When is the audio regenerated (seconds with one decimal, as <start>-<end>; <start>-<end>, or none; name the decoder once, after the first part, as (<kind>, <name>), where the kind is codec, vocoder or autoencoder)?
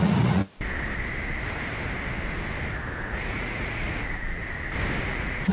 0.0-0.4 (vocoder, Vocos); 3.0-4.4; 5.0-5.5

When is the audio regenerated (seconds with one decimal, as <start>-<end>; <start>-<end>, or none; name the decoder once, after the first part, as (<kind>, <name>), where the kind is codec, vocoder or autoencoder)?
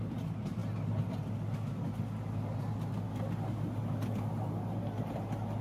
none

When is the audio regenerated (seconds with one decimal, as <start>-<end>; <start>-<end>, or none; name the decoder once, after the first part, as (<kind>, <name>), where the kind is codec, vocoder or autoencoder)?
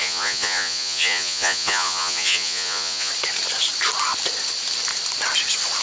0.0-3.1 (vocoder, Vocos)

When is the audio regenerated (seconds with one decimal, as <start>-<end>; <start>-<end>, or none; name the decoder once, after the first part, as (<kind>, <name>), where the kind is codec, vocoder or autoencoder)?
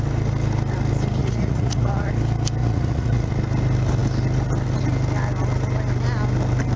1.2-2.1 (vocoder, Vocos); 2.6-3.3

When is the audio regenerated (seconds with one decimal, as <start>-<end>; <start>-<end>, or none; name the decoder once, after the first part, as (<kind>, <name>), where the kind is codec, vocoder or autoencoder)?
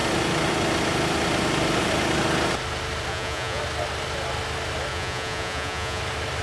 3.1-3.6 (vocoder, Vocos); 4.9-6.0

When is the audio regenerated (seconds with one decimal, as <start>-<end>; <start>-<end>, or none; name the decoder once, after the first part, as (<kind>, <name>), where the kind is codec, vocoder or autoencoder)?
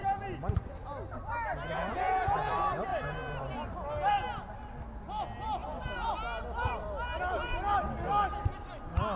1.8-2.5 (vocoder, Vocos)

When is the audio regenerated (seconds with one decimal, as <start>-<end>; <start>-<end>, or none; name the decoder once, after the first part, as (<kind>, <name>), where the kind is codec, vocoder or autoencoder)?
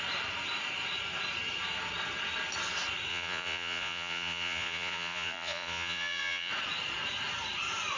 3.1-6.5 (vocoder, Vocos)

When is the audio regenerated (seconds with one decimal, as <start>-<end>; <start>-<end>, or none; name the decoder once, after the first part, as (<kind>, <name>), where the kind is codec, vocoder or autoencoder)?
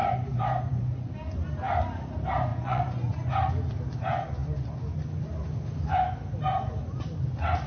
0.0-1.1 (vocoder, Vocos); 2.5-3.5